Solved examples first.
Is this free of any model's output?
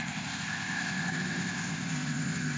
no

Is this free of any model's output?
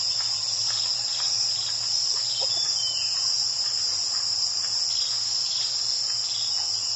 yes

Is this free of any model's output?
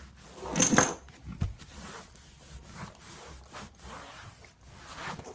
yes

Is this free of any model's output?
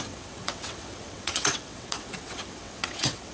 no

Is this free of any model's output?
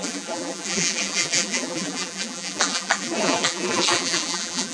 no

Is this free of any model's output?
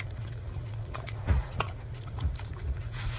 no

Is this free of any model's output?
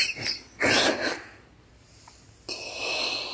yes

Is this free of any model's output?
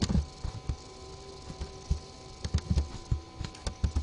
yes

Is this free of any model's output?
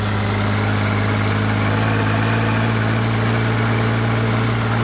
yes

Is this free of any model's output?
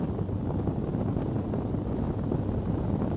yes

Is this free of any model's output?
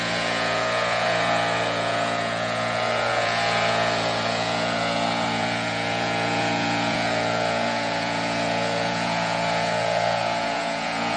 no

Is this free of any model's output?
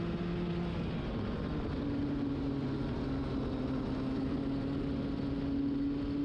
yes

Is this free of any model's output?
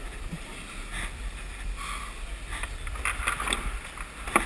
yes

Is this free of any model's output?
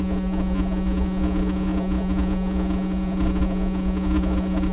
no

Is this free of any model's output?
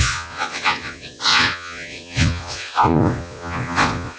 no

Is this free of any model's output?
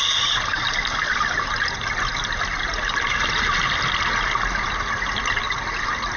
yes